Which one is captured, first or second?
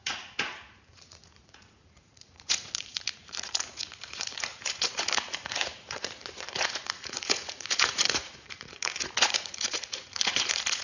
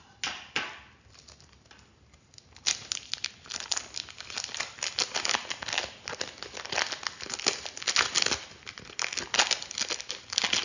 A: second